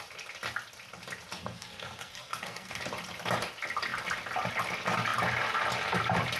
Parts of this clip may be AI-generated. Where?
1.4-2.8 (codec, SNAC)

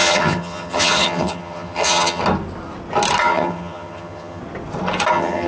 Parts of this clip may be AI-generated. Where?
0.0-2.2 (vocoder, HiFi-GAN); 3.2-4.4; 5.1-5.5

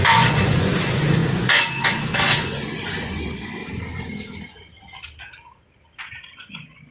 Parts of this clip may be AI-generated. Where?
0.0-3.6 (vocoder, Vocos); 6.0-6.9

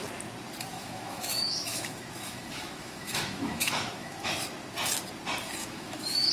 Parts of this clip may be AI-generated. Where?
0.7-4.3 (autoencoder, DAC-VAE); 5.6-6.3

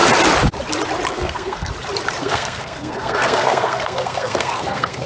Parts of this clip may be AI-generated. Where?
1.1-1.7 (codec, SNAC); 2.2-5.1

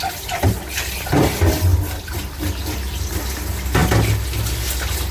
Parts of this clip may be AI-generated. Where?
1.7-3.2 (vocoder, BigVGAN v2)